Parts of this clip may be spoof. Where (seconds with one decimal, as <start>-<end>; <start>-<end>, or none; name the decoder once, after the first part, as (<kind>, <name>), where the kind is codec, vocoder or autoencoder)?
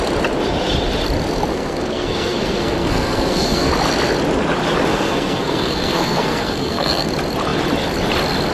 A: 1.5-3.7 (codec, SNAC); 4.9-7.1